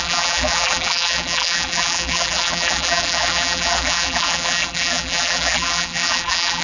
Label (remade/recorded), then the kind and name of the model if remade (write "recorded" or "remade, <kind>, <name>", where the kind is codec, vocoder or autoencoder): remade, vocoder, BigVGAN v2